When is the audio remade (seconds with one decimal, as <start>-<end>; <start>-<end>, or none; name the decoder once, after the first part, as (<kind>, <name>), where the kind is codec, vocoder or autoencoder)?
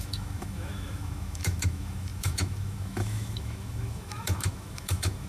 0.0-5.3 (autoencoder, DAC-VAE)